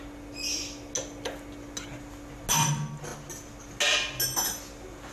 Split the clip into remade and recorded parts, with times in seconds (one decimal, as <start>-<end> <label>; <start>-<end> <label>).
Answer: 0.0-5.1 recorded

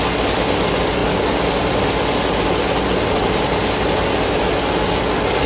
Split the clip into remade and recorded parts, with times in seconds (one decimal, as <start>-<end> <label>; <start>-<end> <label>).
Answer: 0.0-5.5 recorded

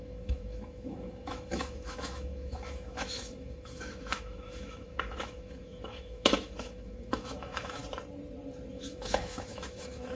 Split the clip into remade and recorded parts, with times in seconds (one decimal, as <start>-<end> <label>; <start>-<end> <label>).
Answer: 0.0-7.8 remade; 7.8-8.7 recorded; 8.7-10.2 remade

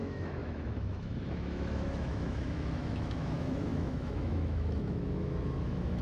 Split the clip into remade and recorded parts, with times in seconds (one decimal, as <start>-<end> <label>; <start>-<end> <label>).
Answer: 0.0-6.0 remade

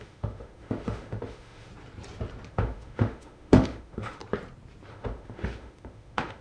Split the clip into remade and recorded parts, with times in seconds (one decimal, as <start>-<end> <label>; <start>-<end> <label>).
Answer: 0.0-1.7 remade; 1.7-2.5 recorded; 2.5-4.2 remade; 4.2-4.9 recorded; 4.9-6.4 remade